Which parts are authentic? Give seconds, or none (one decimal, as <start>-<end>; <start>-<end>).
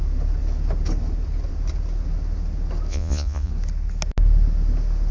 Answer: 0.0-2.9; 3.5-5.1